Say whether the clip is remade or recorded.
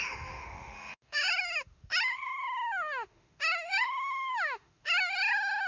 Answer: remade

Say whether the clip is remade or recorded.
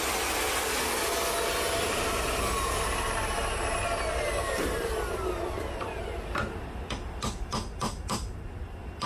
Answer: recorded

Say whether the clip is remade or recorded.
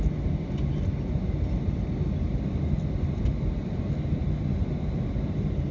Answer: recorded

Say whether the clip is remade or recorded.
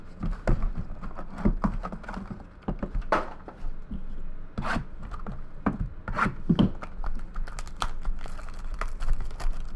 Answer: recorded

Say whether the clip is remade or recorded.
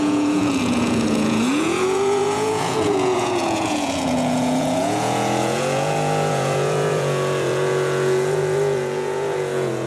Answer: remade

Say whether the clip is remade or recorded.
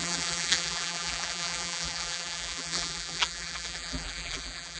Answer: remade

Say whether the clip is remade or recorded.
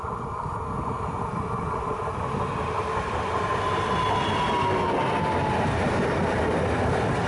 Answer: recorded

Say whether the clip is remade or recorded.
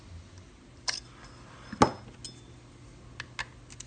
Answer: recorded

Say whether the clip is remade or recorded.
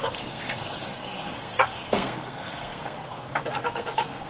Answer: remade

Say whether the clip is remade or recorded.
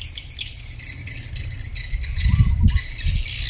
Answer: recorded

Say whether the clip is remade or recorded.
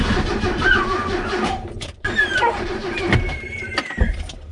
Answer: remade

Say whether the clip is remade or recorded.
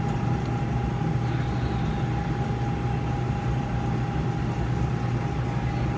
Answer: recorded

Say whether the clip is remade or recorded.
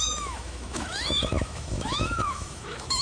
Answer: remade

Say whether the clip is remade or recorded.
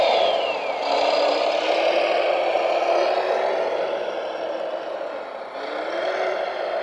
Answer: recorded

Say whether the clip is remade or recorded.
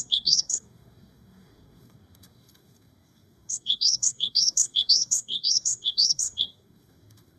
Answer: remade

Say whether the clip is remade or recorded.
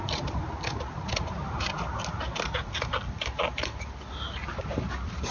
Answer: recorded